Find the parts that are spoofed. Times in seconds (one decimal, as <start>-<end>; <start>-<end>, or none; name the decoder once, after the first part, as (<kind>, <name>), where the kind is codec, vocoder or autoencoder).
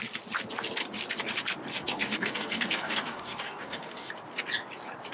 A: 1.7-4.1 (codec, DAC)